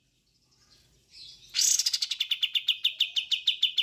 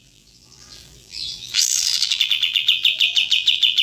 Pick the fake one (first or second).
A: second